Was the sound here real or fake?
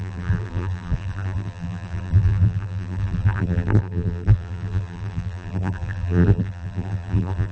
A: fake